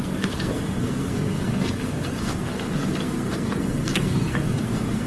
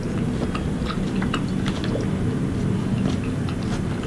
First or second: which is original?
second